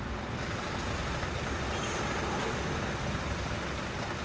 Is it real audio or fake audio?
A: real